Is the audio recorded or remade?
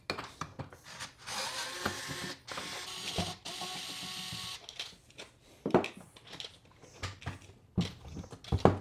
recorded